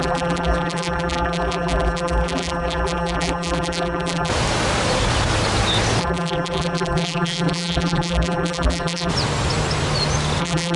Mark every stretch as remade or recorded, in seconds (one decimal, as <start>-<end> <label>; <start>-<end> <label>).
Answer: 0.0-4.3 remade; 4.3-6.0 recorded; 6.0-9.1 remade; 9.1-10.4 recorded; 10.4-10.8 remade